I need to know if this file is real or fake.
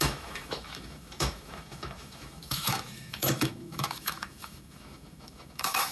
fake